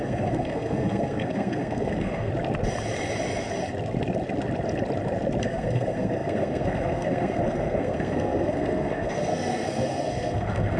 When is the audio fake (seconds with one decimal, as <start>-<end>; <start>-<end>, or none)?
0.0-2.3; 5.4-10.8